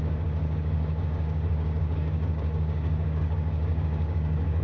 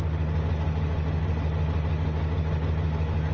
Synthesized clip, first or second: first